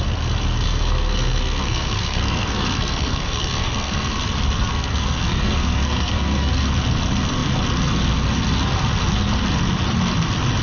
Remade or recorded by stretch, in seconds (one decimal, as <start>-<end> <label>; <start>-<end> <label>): 0.0-0.5 recorded; 0.5-4.1 remade; 4.1-4.7 recorded; 4.7-6.5 remade; 6.5-10.6 recorded